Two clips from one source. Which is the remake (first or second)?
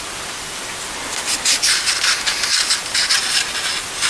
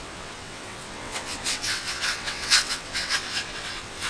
second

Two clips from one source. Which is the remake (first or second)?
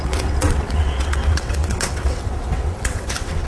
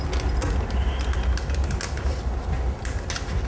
first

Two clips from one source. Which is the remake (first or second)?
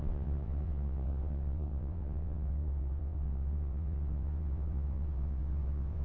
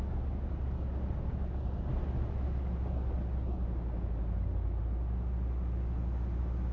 first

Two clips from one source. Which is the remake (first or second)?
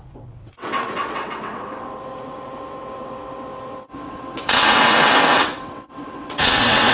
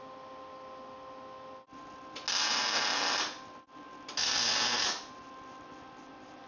first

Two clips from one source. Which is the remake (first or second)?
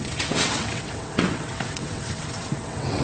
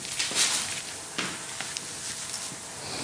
first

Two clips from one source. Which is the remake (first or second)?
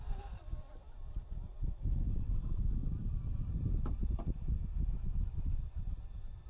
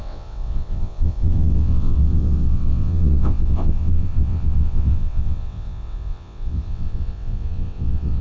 second